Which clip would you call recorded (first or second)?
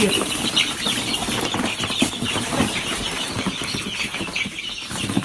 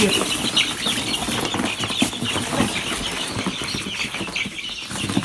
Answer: second